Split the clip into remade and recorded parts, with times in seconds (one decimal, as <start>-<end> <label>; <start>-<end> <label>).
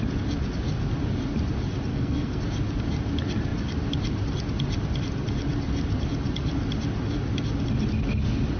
0.0-1.9 recorded; 1.9-2.4 remade; 2.4-8.6 recorded